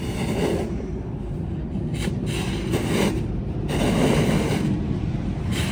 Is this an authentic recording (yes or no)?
yes